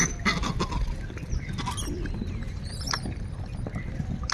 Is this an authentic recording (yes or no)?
yes